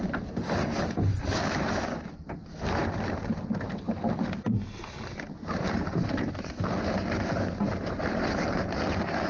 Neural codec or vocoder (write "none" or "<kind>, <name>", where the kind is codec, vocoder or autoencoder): none